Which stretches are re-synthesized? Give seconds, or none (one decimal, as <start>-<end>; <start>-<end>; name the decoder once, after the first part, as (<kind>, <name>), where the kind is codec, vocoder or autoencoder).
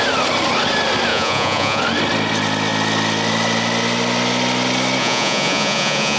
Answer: 1.1-1.8 (vocoder, Vocos); 5.0-6.2